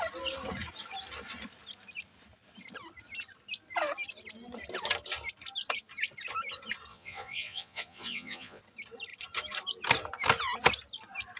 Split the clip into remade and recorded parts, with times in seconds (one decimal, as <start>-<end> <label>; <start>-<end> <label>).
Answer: 0.0-6.9 recorded; 6.9-8.6 remade; 8.6-11.4 recorded